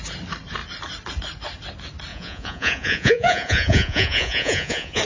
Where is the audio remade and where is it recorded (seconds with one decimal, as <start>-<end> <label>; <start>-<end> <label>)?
0.0-2.1 recorded; 2.1-5.0 remade